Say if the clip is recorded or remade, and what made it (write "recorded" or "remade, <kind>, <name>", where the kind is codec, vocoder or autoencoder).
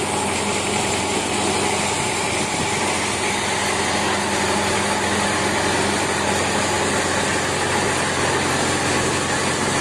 recorded